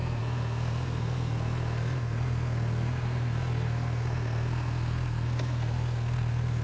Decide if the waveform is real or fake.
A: fake